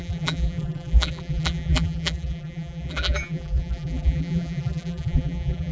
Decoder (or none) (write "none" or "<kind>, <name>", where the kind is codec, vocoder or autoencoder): vocoder, BigVGAN v2